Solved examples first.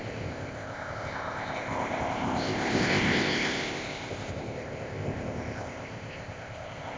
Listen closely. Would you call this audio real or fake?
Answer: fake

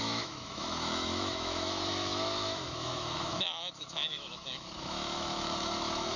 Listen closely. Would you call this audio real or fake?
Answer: fake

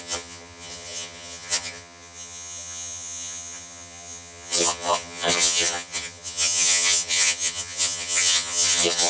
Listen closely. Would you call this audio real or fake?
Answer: fake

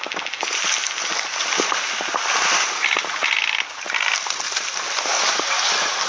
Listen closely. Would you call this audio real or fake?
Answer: real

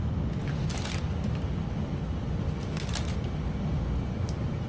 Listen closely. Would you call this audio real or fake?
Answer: real